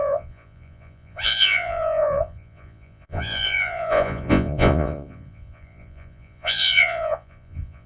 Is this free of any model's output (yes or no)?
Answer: no